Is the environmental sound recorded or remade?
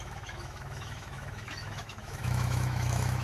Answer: remade